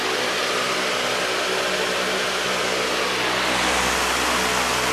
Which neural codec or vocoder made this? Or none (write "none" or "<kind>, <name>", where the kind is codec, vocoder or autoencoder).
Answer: none